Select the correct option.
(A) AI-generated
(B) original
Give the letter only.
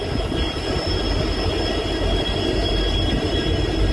B